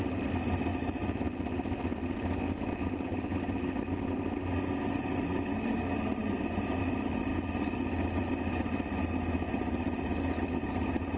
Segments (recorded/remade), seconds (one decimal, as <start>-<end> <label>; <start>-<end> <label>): 0.0-11.2 recorded